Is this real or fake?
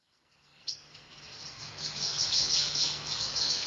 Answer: fake